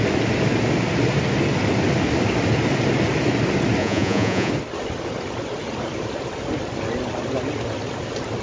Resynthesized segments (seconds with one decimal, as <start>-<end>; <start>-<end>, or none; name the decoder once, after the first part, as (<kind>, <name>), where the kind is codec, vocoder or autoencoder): 3.8-4.5 (vocoder, Vocos)